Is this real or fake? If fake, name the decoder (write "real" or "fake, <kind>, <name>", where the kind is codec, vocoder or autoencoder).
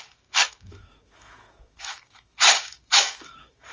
fake, autoencoder, DAC-VAE